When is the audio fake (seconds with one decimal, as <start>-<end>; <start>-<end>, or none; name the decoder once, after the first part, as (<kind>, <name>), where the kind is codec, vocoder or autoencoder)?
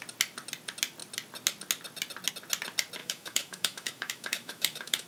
3.0-5.1 (autoencoder, DAC-VAE)